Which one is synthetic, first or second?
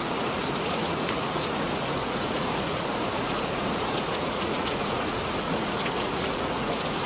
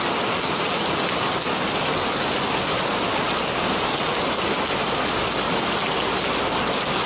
first